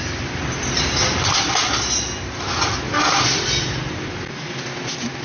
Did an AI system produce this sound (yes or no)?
no